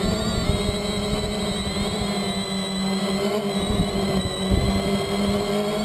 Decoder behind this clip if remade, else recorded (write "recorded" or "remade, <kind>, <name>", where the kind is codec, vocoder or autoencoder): recorded